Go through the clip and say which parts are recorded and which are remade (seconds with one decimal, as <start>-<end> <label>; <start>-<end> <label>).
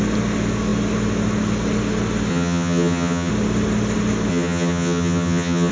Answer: 0.0-2.3 recorded; 2.3-3.3 remade; 3.3-4.3 recorded; 4.3-5.7 remade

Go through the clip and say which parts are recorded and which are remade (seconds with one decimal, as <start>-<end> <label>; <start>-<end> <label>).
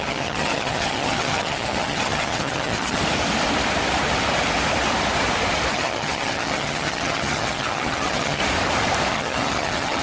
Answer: 0.0-3.0 remade; 3.0-5.7 recorded; 5.7-8.4 remade; 8.4-9.1 recorded; 9.1-10.0 remade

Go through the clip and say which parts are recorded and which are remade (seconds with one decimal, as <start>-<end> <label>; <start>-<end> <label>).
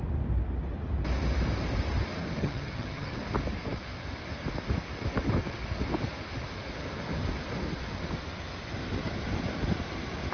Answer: 0.0-2.4 recorded; 2.4-3.2 remade; 3.2-10.3 recorded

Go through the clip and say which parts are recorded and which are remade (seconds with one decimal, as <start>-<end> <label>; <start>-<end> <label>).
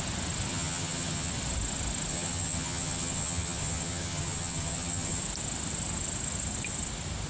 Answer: 0.0-0.5 recorded; 0.5-1.3 remade; 1.3-2.1 recorded; 2.1-5.2 remade; 5.2-7.3 recorded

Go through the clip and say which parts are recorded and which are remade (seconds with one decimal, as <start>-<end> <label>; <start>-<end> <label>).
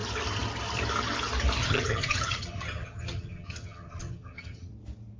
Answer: 0.0-1.6 recorded; 1.6-4.7 remade; 4.7-5.2 recorded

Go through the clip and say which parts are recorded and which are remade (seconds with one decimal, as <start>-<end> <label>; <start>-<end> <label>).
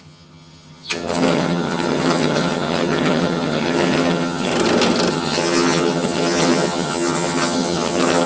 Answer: 0.0-4.5 remade; 4.5-5.1 recorded; 5.1-8.3 remade